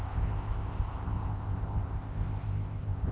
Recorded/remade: remade